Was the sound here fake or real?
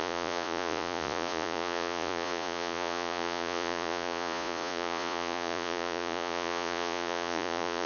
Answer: fake